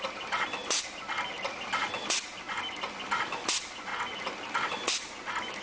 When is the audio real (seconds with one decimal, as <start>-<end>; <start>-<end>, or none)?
3.9-4.7